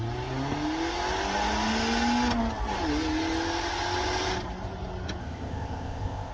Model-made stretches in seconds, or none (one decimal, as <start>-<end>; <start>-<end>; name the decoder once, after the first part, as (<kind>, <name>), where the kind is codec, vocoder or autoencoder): 5.2-6.3 (codec, ZipCodec)